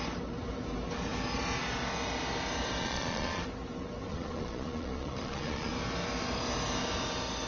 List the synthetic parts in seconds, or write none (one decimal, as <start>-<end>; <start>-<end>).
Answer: 2.8-3.4; 4.1-5.7